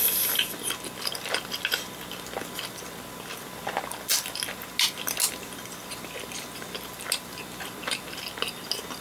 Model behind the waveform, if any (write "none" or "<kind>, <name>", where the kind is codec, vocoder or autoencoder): none